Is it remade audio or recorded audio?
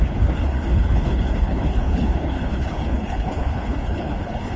remade